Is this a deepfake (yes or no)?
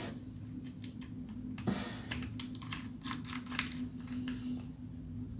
no